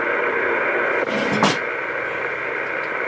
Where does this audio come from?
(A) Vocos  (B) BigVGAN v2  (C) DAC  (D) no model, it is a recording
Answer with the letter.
B